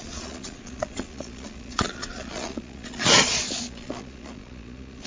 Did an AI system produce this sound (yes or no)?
yes